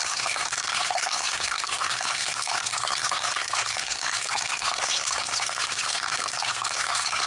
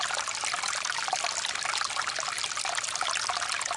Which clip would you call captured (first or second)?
second